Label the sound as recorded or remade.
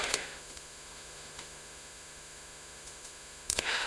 remade